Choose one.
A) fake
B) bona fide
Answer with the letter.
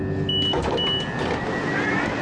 B